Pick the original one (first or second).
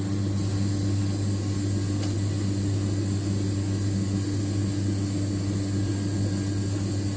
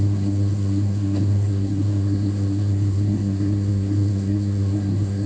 first